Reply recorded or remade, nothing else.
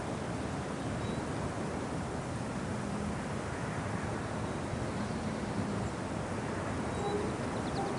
recorded